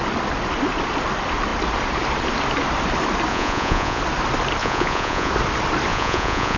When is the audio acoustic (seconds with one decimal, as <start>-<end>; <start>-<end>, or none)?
0.0-3.3; 4.0-4.6; 5.3-5.9